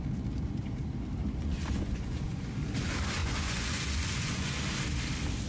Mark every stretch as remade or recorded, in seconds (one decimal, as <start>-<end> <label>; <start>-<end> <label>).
0.0-1.4 recorded; 1.4-2.5 remade; 2.5-3.2 recorded; 3.2-4.6 remade; 4.6-5.5 recorded